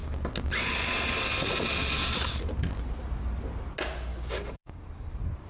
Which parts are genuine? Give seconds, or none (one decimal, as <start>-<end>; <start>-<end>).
0.0-4.1; 4.8-5.5